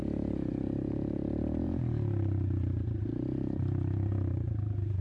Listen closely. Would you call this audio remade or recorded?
remade